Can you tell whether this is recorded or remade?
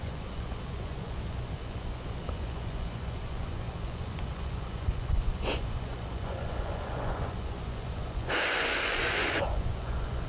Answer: remade